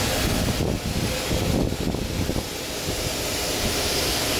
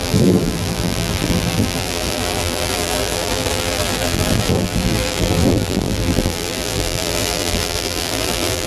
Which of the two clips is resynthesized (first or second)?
second